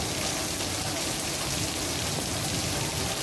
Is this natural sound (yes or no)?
yes